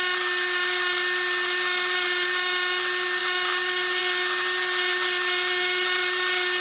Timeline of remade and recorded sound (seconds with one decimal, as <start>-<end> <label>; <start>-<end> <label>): 0.0-6.6 recorded